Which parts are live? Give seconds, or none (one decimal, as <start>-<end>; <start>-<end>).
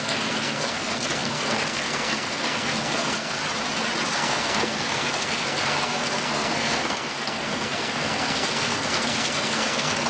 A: 3.4-4.1